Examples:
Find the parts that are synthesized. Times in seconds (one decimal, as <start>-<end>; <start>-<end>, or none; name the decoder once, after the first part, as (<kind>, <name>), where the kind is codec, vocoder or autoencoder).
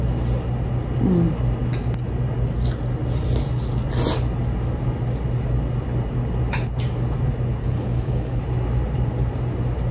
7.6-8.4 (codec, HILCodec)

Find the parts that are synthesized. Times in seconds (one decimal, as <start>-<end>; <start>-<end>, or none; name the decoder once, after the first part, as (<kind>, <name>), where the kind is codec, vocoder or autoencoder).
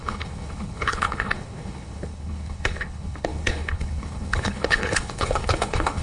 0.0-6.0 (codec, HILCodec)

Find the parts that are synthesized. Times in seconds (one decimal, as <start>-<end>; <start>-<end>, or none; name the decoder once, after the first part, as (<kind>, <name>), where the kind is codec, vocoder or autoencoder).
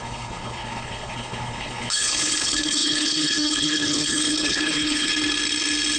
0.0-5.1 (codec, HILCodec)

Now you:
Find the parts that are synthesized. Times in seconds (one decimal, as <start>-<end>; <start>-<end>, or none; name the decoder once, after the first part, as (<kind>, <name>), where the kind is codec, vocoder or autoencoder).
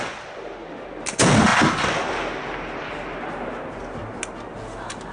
none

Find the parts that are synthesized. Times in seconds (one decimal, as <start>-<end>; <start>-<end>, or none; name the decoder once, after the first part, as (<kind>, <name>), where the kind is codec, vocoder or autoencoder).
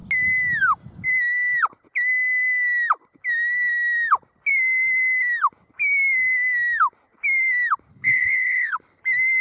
7.9-9.0 (codec, HILCodec)